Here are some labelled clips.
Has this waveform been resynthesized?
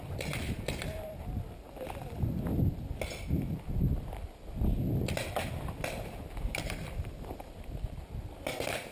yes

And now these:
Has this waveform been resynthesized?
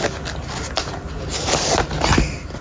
no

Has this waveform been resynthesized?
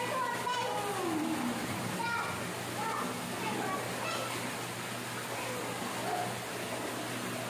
no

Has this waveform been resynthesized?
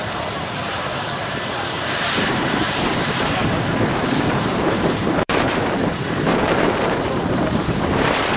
yes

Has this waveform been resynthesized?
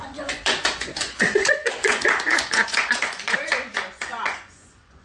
yes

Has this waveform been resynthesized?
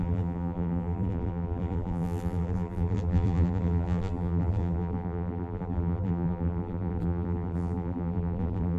yes